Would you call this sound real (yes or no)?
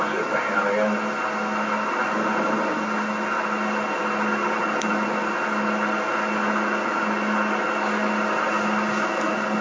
yes